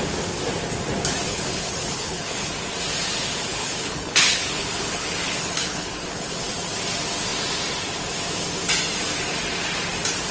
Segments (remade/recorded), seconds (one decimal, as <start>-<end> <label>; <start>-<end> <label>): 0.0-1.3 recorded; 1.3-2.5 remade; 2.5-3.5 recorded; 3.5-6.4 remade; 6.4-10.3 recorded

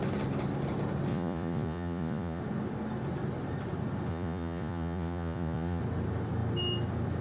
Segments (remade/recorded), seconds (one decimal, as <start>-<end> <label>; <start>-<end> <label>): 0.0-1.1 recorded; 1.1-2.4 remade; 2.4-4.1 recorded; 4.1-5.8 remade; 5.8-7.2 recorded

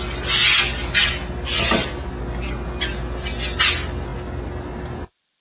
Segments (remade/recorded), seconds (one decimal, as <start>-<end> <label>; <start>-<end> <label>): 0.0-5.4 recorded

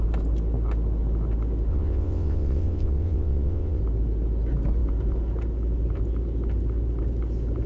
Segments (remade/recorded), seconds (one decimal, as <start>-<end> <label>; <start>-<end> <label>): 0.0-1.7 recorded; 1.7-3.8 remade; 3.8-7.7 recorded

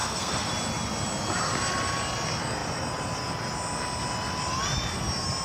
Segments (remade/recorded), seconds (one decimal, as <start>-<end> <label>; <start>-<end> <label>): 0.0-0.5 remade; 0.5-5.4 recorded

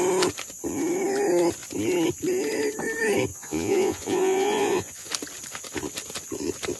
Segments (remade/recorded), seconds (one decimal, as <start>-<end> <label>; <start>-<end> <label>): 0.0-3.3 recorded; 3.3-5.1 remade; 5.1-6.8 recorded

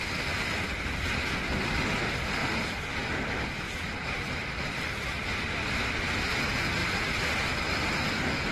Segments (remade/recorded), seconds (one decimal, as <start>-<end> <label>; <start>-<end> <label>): 0.0-2.4 recorded; 2.4-6.0 remade; 6.0-6.8 recorded; 6.8-8.5 remade